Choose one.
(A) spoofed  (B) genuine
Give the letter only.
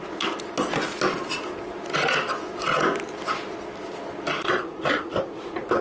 B